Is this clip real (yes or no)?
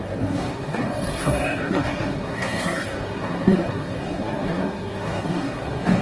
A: no